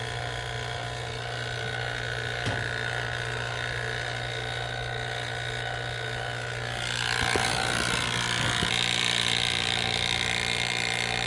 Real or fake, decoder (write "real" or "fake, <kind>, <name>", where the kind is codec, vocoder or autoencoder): real